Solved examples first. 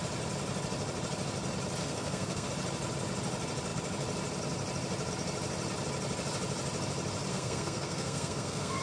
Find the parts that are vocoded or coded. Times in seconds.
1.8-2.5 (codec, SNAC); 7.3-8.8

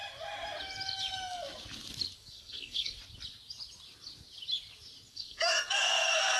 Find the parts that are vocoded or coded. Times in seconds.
2.2-3.0 (codec, SNAC); 5.1-6.4

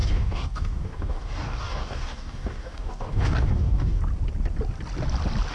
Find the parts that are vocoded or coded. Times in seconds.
0.0-4.0 (codec, DAC)

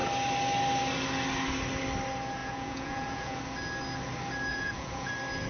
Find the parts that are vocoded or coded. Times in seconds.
2.4-3.4 (vocoder, Vocos); 4.5-5.1